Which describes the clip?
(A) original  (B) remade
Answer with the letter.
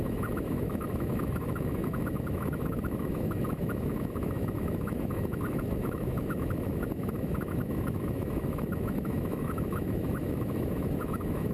B